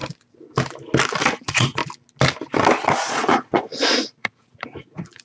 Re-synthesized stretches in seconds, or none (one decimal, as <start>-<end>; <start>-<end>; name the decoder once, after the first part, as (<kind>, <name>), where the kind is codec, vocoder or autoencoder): 1.4-1.8 (vocoder, Vocos); 3.1-5.2